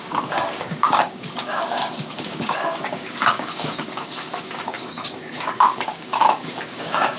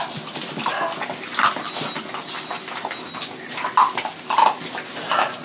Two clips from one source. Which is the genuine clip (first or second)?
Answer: second